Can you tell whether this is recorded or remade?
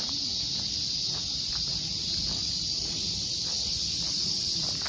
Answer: recorded